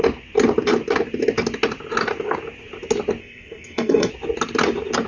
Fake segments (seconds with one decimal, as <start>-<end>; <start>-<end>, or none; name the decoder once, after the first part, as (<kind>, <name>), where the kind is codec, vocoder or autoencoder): 3.2-4.1 (codec, SNAC)